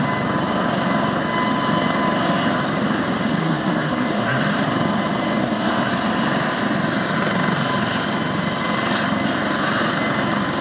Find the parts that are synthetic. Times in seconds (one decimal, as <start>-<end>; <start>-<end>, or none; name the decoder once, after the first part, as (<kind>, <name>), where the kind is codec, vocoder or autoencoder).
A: 3.4-4.4 (codec, SNAC); 5.4-5.9